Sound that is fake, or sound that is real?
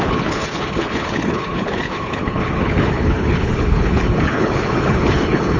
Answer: fake